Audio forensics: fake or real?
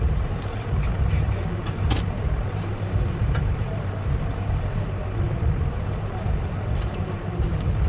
fake